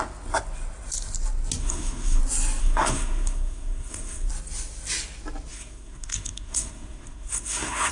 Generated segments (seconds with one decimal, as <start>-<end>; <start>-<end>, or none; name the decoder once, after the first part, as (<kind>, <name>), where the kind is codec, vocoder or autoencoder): 1.6-2.2 (codec, SNAC); 2.6-4.3; 5.5-7.9